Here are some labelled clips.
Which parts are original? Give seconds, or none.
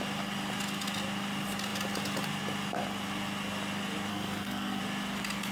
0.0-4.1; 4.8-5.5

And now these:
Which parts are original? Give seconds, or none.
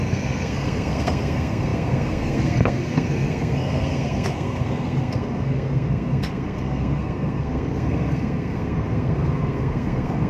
none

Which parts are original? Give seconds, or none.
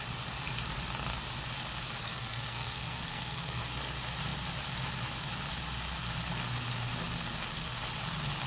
0.0-2.0; 3.6-8.5